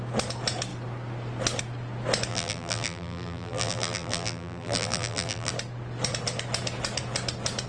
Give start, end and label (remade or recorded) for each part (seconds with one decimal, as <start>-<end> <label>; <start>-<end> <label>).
0.0-2.3 recorded; 2.3-5.5 remade; 5.5-7.7 recorded